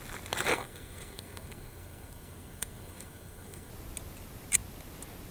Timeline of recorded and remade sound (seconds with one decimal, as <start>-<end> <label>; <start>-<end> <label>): 0.0-0.5 recorded; 0.5-3.7 remade; 3.7-5.3 recorded